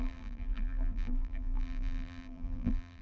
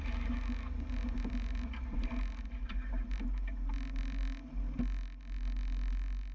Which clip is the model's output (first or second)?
first